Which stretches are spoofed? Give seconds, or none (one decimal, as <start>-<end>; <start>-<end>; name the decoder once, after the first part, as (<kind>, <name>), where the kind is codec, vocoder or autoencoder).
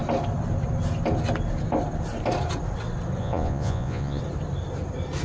3.2-4.2 (vocoder, Vocos)